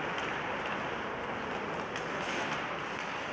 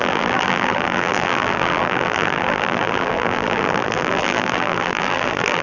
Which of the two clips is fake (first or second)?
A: second